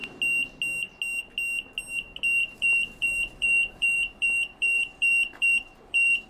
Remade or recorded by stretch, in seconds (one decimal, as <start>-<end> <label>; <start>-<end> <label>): 0.0-2.4 recorded; 2.4-6.3 remade